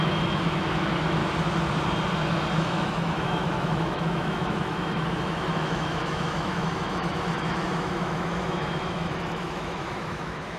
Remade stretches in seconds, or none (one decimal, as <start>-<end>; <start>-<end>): 0.0-1.2; 2.6-10.6